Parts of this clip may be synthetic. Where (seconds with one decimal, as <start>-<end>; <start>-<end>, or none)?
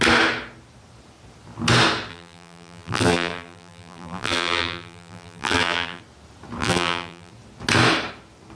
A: 2.1-6.0; 6.6-7.3